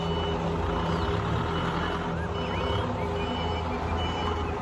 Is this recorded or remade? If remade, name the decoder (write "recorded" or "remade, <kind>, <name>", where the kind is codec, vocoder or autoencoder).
recorded